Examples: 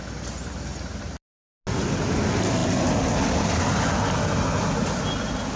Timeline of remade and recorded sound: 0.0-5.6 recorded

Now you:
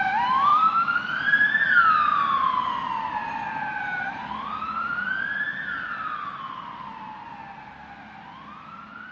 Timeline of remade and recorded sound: 0.0-0.5 recorded; 0.5-1.2 remade; 1.2-9.1 recorded

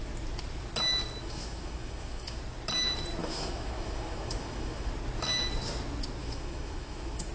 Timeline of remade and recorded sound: 0.0-1.2 recorded; 1.2-2.4 remade; 2.4-3.2 recorded; 3.2-4.9 remade; 4.9-6.2 recorded; 6.2-7.3 remade

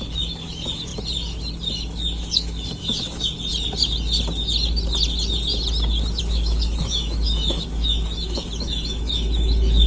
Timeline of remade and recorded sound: 0.0-0.9 remade; 0.9-1.7 recorded; 1.7-3.5 remade; 3.5-6.2 recorded; 6.2-9.9 remade

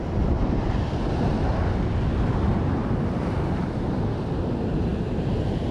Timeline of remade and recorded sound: 0.0-5.7 recorded